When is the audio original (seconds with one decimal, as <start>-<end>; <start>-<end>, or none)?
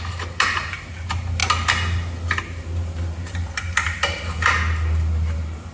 0.0-5.7